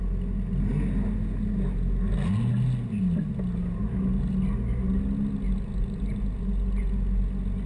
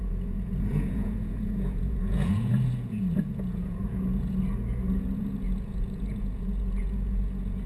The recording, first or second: first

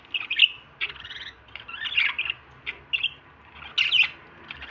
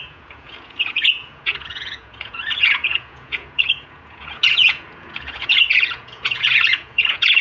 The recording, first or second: first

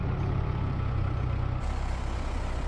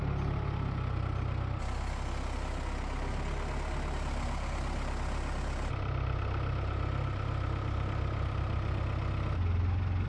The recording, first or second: second